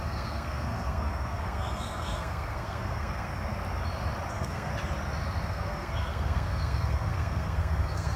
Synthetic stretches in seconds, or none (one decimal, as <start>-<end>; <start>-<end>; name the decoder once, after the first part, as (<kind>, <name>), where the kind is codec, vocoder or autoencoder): 0.0-3.3 (codec, SNAC); 4.3-4.7; 5.5-8.2

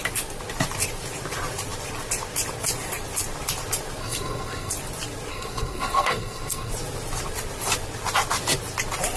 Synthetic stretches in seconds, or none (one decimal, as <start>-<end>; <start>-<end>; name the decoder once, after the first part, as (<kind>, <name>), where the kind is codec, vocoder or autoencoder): 4.0-4.7 (codec, SNAC); 5.3-6.7

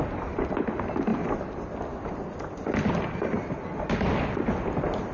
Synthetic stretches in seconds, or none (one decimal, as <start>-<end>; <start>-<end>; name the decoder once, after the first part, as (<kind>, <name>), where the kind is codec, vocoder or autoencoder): none